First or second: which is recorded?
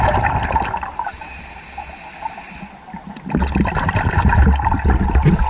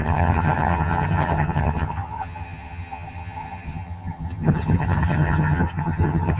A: first